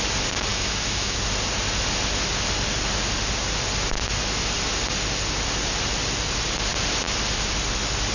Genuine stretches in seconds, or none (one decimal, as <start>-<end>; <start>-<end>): 0.0-0.5; 1.2-8.1